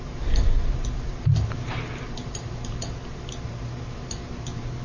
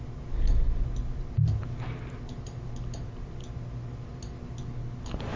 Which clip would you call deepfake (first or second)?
first